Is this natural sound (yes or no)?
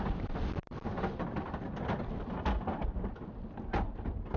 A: yes